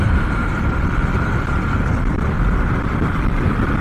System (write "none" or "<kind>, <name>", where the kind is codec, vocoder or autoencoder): vocoder, BigVGAN v2